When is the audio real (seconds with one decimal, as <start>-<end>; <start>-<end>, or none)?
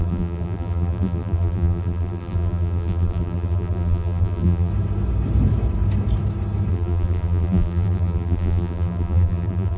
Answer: 4.7-6.7